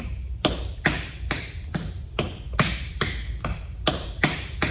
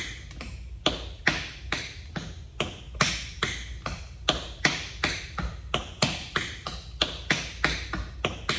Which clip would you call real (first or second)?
second